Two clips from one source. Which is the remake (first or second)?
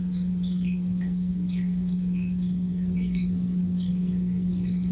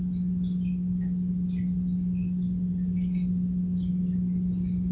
first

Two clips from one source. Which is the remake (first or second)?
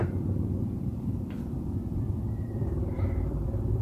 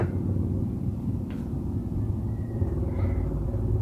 first